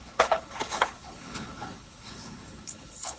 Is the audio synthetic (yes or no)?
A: yes